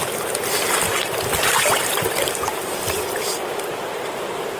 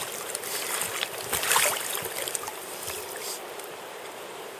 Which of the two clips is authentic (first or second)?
first